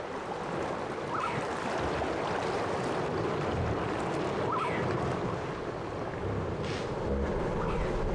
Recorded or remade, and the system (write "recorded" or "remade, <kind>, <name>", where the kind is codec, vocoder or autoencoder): recorded